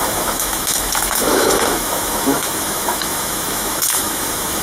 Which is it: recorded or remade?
remade